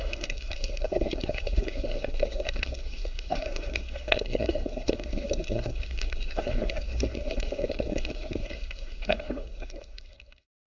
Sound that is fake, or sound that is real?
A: fake